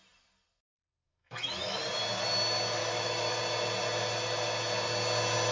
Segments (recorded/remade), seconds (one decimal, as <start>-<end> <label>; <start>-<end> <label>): 0.0-1.0 recorded; 1.0-1.8 remade; 1.8-2.8 recorded; 2.8-3.4 remade; 3.4-5.5 recorded